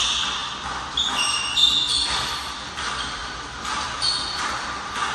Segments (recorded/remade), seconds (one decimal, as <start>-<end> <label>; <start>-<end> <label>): 0.0-0.4 remade; 0.4-2.3 recorded; 2.3-3.2 remade; 3.2-4.4 recorded; 4.4-5.1 remade